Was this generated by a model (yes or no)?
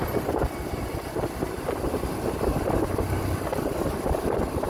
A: no